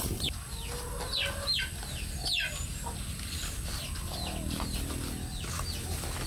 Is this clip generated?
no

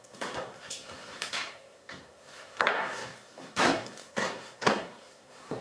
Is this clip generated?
yes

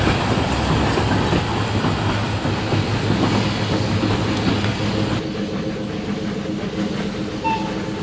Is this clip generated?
no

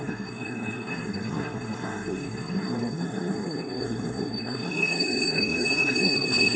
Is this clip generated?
yes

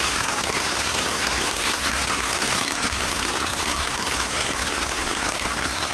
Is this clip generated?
yes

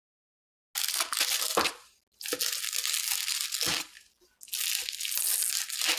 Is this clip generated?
no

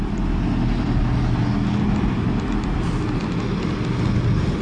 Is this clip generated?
no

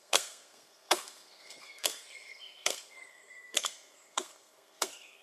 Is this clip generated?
yes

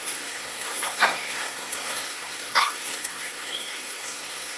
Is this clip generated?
yes